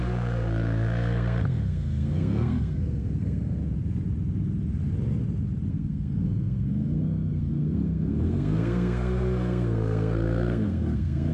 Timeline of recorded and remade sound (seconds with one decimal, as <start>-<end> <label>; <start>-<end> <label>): 0.0-3.6 remade; 3.6-5.7 recorded; 5.7-11.3 remade